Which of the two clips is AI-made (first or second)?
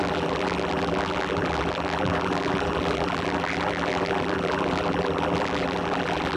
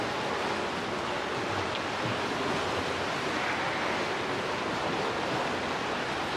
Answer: first